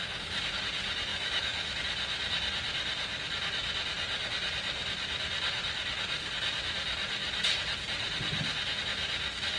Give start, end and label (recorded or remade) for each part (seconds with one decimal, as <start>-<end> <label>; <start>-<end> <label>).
0.0-0.6 remade; 0.6-1.1 recorded; 1.1-1.8 remade; 1.8-9.6 recorded